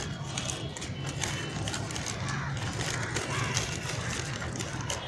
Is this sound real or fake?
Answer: real